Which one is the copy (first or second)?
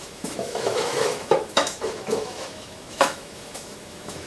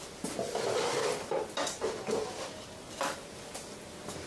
first